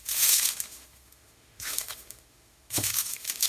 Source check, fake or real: fake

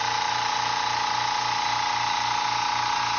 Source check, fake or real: real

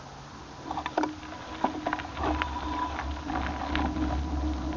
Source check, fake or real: real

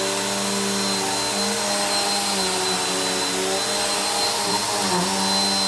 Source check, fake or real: real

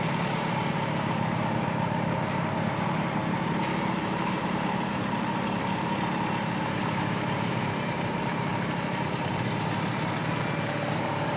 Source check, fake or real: fake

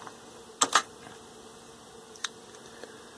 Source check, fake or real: real